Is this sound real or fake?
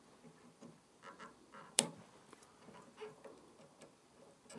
fake